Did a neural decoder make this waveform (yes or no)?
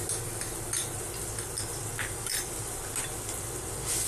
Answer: no